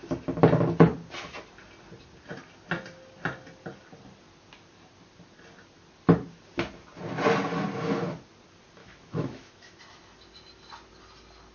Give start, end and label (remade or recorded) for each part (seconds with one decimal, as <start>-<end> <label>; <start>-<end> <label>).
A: 0.0-8.8 recorded; 8.8-9.8 remade; 9.8-11.5 recorded